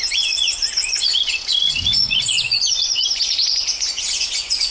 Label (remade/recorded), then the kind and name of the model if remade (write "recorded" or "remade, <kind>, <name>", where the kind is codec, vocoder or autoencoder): remade, vocoder, Vocos